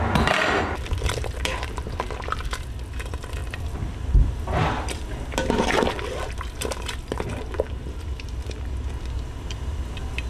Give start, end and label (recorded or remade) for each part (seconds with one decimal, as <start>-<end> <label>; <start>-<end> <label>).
0.0-10.3 recorded